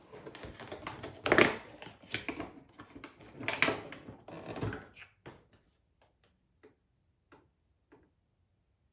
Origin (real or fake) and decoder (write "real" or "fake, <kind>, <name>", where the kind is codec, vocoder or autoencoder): real